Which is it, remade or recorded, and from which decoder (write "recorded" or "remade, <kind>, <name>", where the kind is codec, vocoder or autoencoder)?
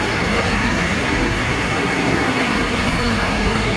remade, codec, SNAC